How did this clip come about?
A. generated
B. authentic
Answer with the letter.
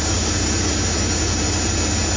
B